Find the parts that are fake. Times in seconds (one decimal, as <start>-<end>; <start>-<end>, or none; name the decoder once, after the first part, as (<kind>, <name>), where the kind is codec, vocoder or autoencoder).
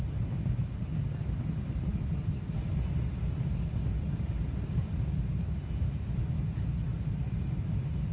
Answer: none